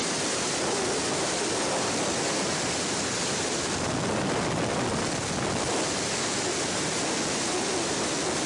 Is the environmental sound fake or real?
real